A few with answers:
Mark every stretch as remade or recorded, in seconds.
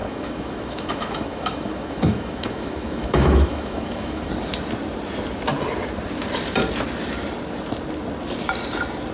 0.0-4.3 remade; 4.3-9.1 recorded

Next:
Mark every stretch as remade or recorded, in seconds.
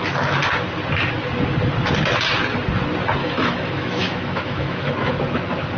0.0-3.2 recorded; 3.2-4.9 remade; 4.9-5.8 recorded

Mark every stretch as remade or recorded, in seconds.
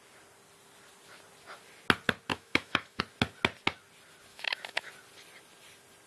0.0-2.3 recorded; 2.3-3.0 remade; 3.0-4.3 recorded; 4.3-4.9 remade; 4.9-6.1 recorded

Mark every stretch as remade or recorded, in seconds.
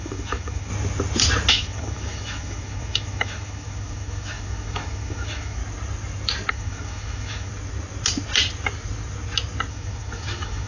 0.0-0.7 remade; 0.7-1.5 recorded; 1.5-5.6 remade; 5.6-6.5 recorded; 6.5-7.5 remade; 7.5-9.7 recorded; 9.7-10.7 remade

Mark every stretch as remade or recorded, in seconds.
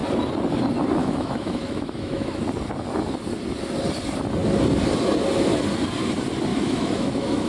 0.0-1.0 recorded; 1.0-2.4 remade; 2.4-6.5 recorded; 6.5-7.5 remade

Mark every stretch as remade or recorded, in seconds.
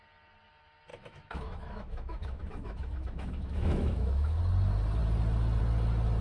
0.0-0.9 recorded; 0.9-4.4 remade; 4.4-6.2 recorded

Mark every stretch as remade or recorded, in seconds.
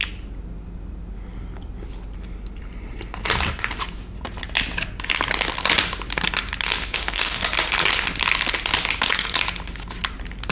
0.0-6.8 recorded; 6.8-7.4 remade; 7.4-10.5 recorded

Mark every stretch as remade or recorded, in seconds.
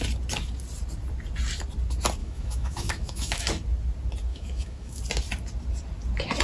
0.0-2.2 recorded; 2.2-3.5 remade; 3.5-4.3 recorded; 4.3-5.0 remade; 5.0-6.4 recorded